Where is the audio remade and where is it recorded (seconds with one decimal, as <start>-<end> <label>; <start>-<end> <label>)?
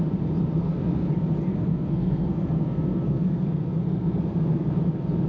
0.0-0.6 recorded; 0.6-1.1 remade; 1.1-1.5 recorded; 1.5-4.7 remade; 4.7-5.3 recorded